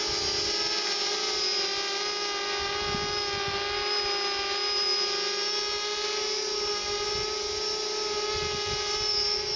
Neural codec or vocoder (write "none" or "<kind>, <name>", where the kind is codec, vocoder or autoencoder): none